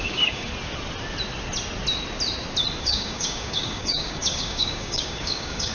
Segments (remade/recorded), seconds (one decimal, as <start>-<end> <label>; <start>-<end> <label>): 0.0-0.5 remade; 0.5-2.8 recorded; 2.8-5.7 remade